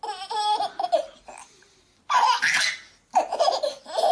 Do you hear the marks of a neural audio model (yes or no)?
no